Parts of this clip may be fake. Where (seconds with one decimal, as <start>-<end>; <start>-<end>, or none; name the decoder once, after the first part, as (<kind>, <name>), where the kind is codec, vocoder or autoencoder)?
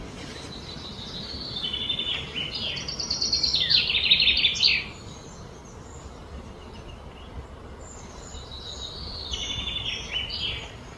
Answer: none